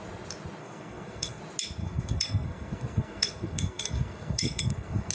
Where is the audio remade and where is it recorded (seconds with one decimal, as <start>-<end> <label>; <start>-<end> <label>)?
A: 0.0-0.6 recorded; 0.6-1.4 remade; 1.4-1.8 recorded; 1.8-5.1 remade